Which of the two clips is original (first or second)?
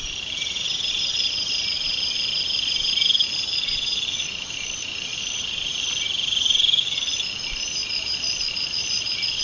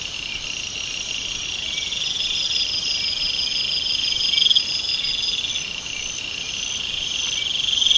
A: second